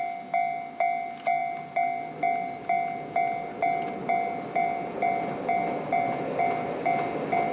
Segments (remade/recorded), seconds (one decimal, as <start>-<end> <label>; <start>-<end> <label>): 0.0-7.5 recorded